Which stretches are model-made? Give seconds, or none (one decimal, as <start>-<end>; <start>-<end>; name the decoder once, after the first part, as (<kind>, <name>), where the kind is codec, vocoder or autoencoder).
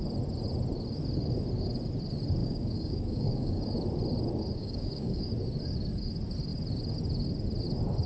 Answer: 2.4-3.6 (codec, DAC); 4.6-5.3